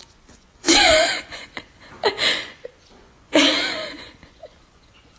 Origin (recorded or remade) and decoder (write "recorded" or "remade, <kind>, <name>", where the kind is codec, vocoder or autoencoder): remade, vocoder, Vocos